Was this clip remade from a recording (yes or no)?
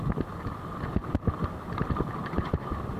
no